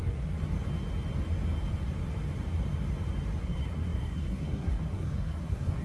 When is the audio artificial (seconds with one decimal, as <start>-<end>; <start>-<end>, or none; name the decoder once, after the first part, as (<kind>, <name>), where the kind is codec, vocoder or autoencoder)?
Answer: 0.0-0.4 (codec, SNAC); 3.4-5.8